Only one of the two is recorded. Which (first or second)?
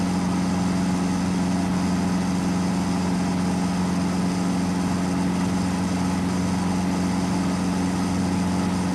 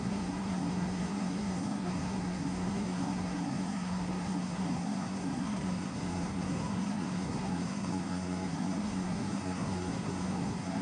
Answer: first